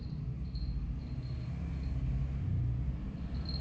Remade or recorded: recorded